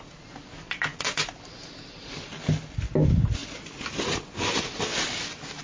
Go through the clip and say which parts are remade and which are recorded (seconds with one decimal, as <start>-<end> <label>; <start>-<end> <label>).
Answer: 0.0-5.6 recorded

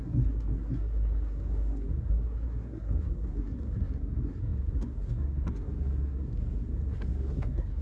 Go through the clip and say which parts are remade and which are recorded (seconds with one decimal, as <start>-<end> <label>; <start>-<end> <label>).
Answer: 0.0-7.8 remade

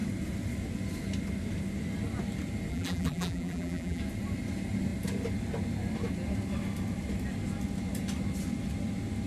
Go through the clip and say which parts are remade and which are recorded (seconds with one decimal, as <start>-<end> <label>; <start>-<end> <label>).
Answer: 0.0-2.7 recorded; 2.7-4.0 remade; 4.0-9.3 recorded

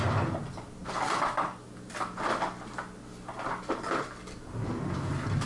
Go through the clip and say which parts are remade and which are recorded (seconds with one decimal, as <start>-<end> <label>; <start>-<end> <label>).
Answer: 0.0-5.5 recorded